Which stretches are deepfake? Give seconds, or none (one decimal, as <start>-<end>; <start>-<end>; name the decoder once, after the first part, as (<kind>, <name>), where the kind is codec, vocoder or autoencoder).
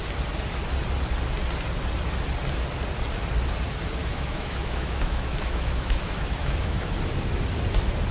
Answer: 4.0-6.9 (autoencoder, DAC-VAE)